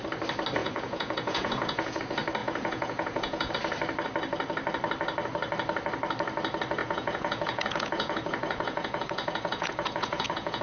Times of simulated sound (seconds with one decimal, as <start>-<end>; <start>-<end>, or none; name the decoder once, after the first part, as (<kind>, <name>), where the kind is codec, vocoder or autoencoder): 0.6-2.0 (vocoder, Vocos); 2.4-3.5; 6.8-10.6